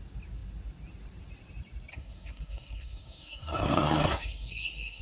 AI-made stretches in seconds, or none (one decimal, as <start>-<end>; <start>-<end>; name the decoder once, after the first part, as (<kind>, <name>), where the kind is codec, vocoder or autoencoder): 1.9-5.0 (codec, SNAC)